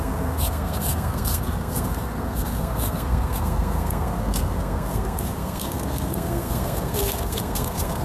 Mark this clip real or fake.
fake